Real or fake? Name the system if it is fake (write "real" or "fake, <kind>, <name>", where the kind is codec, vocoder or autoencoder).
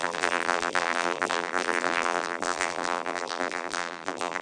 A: fake, vocoder, BigVGAN v2